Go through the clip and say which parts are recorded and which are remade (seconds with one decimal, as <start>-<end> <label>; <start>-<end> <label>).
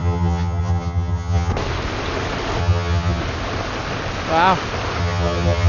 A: 0.0-1.5 remade; 1.5-2.6 recorded; 2.6-3.2 remade; 3.2-5.0 recorded; 5.0-5.7 remade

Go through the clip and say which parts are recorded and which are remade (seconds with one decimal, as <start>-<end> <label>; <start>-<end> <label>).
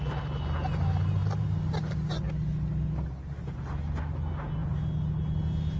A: 0.0-5.8 recorded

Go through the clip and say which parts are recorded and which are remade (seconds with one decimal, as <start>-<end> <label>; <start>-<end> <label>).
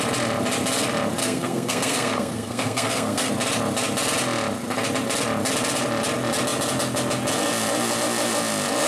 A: 0.0-1.2 recorded; 1.2-3.3 remade; 3.3-8.9 recorded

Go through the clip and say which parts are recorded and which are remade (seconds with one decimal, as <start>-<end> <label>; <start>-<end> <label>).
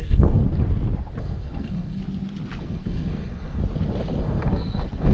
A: 0.0-0.4 remade; 0.4-1.2 recorded; 1.2-2.0 remade; 2.0-2.6 recorded; 2.6-3.6 remade; 3.6-4.2 recorded; 4.2-5.1 remade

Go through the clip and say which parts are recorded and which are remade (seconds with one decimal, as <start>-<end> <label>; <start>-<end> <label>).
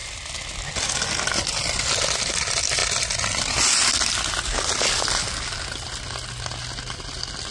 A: 0.0-7.5 recorded